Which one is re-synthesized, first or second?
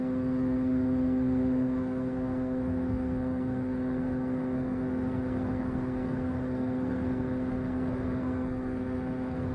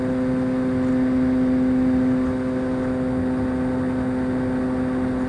first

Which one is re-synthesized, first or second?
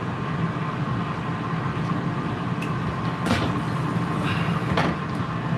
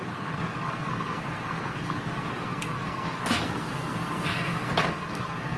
second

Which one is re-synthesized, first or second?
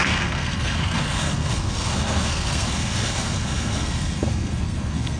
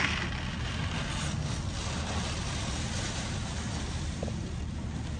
first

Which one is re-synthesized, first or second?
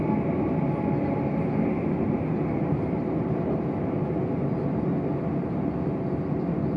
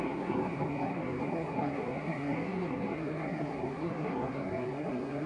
second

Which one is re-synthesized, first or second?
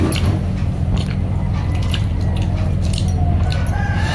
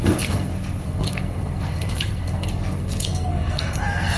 second